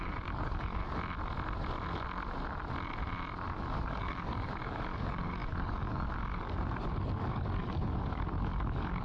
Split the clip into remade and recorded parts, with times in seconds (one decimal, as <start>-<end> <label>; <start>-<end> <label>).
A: 0.0-0.8 remade; 0.8-3.9 recorded; 3.9-9.0 remade